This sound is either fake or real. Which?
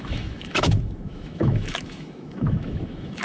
fake